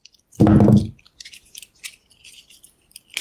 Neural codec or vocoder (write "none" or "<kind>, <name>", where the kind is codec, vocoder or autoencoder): none